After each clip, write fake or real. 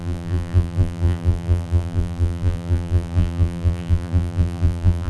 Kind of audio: fake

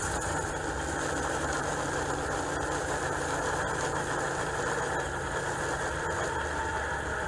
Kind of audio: real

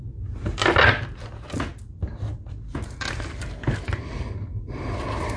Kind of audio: real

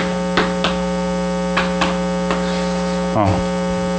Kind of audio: real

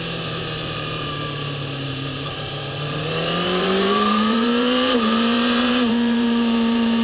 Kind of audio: fake